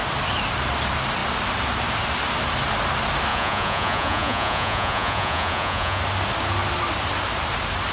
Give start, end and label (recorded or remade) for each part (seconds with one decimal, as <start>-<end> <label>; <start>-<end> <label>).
0.0-3.3 recorded; 3.3-6.0 remade; 6.0-7.9 recorded